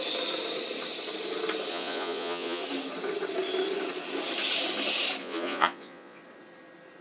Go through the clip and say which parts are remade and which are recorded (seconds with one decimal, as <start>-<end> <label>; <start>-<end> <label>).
0.0-1.7 recorded; 1.7-2.6 remade; 2.6-5.2 recorded; 5.2-6.2 remade; 6.2-7.0 recorded